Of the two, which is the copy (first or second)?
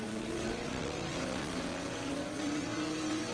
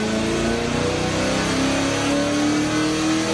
first